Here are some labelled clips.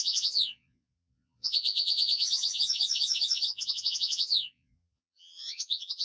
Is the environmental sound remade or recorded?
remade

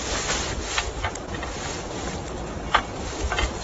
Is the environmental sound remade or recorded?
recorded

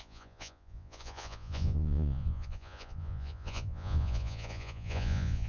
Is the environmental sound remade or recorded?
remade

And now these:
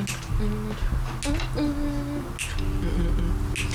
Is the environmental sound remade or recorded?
recorded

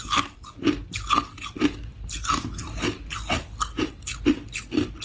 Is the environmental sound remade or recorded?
recorded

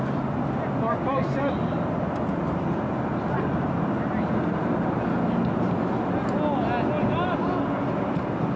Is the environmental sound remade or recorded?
recorded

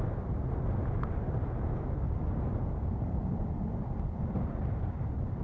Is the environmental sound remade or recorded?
recorded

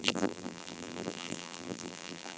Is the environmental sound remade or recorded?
remade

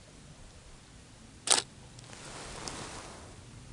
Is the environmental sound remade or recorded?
recorded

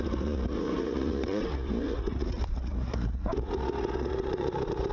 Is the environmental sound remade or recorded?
remade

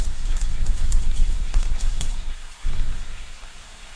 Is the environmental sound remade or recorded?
remade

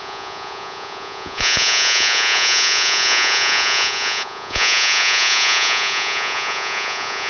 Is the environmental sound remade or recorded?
remade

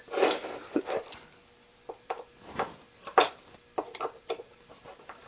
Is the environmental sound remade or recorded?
remade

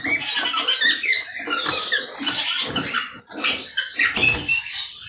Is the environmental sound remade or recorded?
recorded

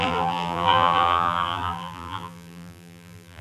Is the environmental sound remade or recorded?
remade